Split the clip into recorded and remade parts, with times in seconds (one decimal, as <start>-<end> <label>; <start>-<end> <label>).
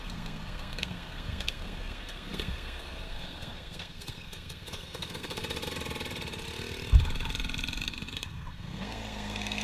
0.0-5.4 remade; 5.4-7.9 recorded; 7.9-9.6 remade